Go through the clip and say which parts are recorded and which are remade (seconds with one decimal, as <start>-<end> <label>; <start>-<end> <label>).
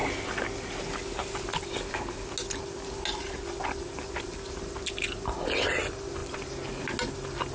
0.0-7.5 recorded